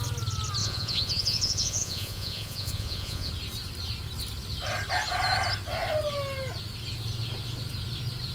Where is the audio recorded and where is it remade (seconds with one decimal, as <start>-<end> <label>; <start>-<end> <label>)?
0.0-0.6 recorded; 0.6-3.3 remade; 3.3-8.3 recorded